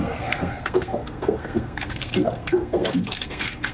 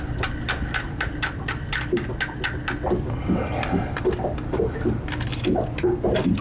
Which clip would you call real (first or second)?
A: second